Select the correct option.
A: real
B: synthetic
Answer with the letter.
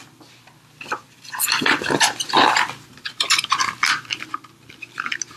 A